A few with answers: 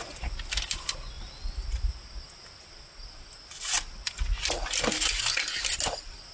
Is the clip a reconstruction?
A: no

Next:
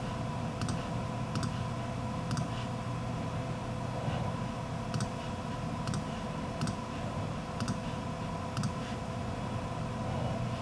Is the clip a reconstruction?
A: no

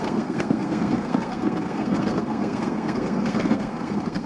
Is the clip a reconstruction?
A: yes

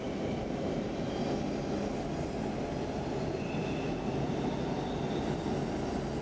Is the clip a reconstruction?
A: no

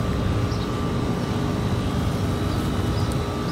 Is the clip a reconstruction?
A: no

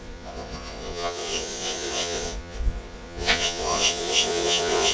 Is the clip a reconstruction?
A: yes